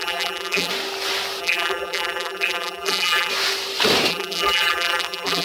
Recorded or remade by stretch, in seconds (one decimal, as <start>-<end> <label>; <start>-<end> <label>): 0.0-0.7 remade; 0.7-1.4 recorded; 1.4-3.3 remade; 3.3-4.1 recorded; 4.1-5.4 remade